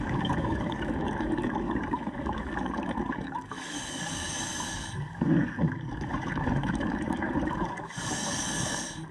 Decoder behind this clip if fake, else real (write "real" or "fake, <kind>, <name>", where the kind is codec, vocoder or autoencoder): fake, codec, DAC